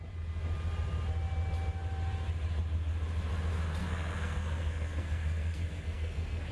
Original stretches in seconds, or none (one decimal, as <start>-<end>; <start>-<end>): 0.0-3.8